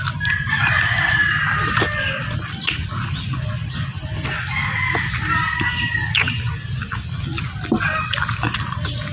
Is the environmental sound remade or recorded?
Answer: recorded